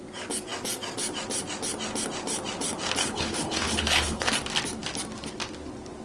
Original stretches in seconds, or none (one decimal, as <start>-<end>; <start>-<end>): 0.0-3.0; 4.3-6.0